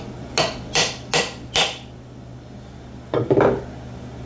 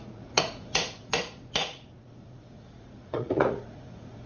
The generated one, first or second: second